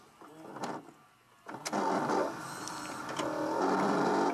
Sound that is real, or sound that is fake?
real